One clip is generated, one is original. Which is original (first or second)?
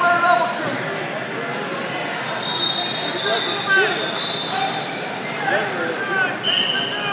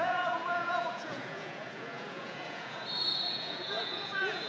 first